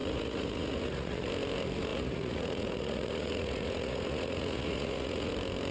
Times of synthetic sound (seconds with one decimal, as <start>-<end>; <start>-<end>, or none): 0.0-1.3; 1.9-5.3